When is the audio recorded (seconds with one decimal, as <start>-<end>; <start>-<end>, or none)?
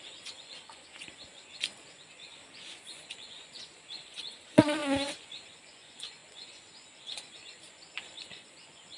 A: none